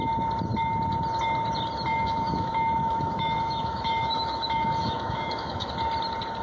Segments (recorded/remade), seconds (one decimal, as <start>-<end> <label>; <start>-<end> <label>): 0.0-1.9 recorded; 1.9-5.7 remade; 5.7-6.4 recorded